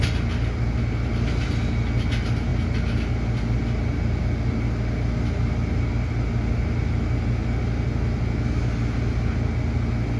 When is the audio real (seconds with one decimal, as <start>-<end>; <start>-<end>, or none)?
0.0-10.2

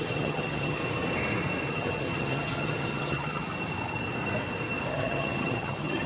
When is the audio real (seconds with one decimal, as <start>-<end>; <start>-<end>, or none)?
0.8-1.7; 3.5-4.9

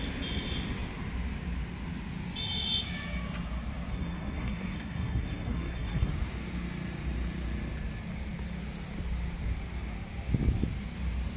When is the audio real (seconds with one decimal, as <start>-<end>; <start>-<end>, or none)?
0.0-3.9; 6.1-11.4

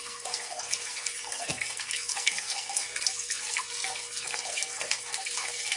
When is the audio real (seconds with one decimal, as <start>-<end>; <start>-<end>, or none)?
none

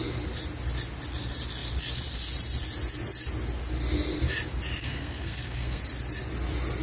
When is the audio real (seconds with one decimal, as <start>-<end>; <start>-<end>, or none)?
0.0-4.8; 5.8-6.8

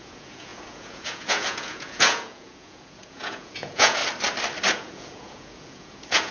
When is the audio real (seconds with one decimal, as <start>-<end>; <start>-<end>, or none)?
4.0-4.7